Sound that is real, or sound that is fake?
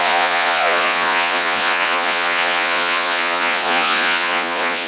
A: fake